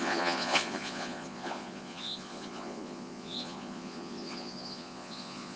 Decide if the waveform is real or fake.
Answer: fake